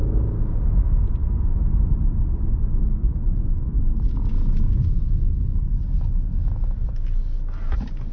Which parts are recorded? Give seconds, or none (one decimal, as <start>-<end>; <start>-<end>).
0.0-8.1